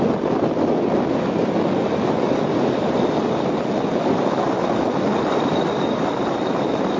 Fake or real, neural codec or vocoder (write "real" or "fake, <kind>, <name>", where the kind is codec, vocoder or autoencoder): real